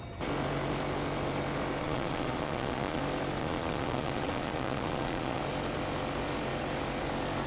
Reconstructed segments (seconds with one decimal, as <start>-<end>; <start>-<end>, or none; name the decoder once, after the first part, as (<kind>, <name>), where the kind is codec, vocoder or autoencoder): 1.8-3.0 (vocoder, Vocos); 3.4-5.4